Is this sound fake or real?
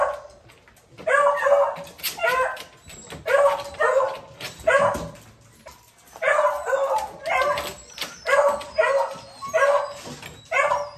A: real